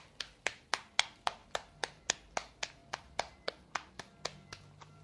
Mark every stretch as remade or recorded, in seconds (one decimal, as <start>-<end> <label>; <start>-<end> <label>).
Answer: 0.0-1.4 recorded; 1.4-2.3 remade; 2.3-2.8 recorded; 2.8-3.9 remade; 3.9-5.0 recorded